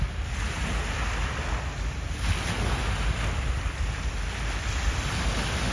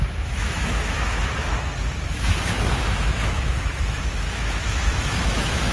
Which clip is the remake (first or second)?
second